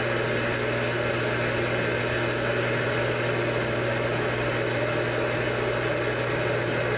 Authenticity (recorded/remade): recorded